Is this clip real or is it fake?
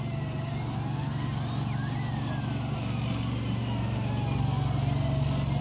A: real